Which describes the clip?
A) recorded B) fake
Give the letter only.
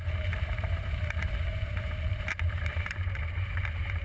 B